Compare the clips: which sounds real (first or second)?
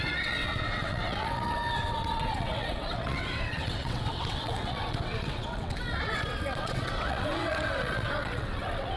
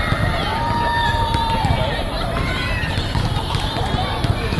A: second